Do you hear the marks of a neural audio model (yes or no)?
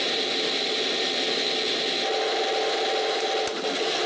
no